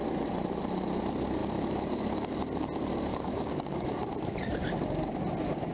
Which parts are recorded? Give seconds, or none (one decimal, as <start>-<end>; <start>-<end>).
0.0-3.1; 4.0-5.7